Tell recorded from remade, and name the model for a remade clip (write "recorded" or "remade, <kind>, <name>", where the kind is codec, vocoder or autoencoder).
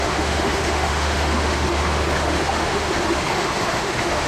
remade, autoencoder, DAC-VAE